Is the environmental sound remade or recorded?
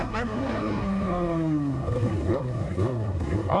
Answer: remade